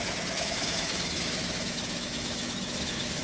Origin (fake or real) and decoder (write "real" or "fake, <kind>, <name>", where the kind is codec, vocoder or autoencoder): fake, autoencoder, DAC-VAE